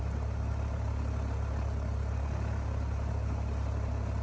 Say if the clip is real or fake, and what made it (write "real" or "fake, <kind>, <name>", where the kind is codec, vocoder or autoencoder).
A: real